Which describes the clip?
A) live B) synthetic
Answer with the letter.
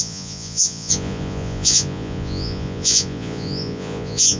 B